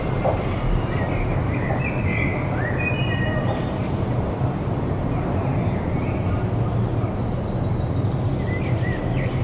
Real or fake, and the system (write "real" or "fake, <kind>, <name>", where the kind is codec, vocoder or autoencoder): real